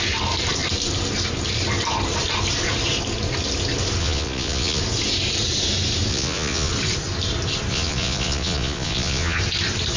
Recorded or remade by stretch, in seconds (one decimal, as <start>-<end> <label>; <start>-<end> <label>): 0.0-4.0 recorded; 4.0-4.8 remade; 4.8-6.1 recorded; 6.1-6.7 remade; 6.7-7.7 recorded; 7.7-9.4 remade; 9.4-10.0 recorded